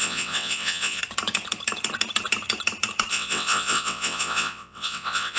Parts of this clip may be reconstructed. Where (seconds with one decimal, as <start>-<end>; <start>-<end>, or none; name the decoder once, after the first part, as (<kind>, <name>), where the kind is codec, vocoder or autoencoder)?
0.0-1.0 (vocoder, WaveNeXt); 3.1-5.4